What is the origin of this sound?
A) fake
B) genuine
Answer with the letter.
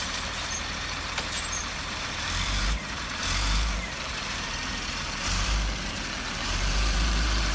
A